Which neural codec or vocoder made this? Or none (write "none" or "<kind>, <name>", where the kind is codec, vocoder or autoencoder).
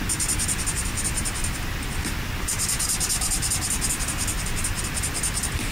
none